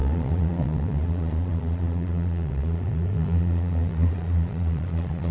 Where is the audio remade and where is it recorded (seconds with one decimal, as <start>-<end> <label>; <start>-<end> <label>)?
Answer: 0.0-5.3 remade